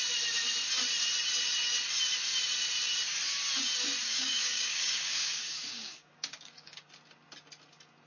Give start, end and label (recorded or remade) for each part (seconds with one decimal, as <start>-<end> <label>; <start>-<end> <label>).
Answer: 0.0-4.0 recorded; 4.0-6.9 remade; 6.9-8.1 recorded